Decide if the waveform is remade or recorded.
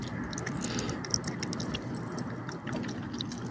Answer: recorded